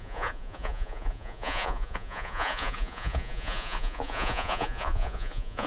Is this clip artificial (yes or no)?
yes